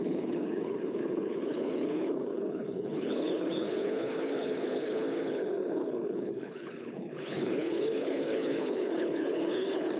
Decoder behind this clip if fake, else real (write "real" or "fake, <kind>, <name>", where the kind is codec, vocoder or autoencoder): fake, codec, HILCodec